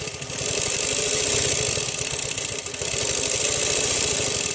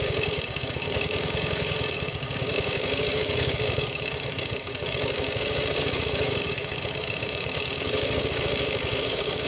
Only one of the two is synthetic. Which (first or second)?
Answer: second